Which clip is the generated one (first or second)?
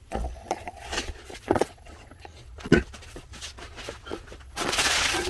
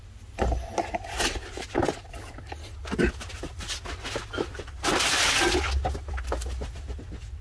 first